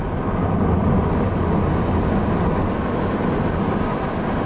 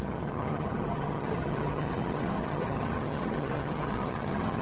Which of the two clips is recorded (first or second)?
first